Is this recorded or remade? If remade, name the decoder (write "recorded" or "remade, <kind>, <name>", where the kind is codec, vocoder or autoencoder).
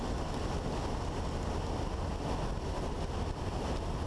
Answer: recorded